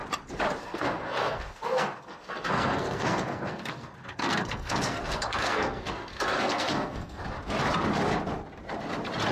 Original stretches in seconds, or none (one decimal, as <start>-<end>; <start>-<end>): 0.0-0.6; 7.2-9.3